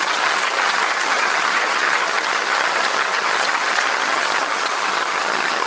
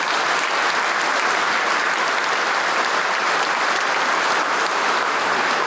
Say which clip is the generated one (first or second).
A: first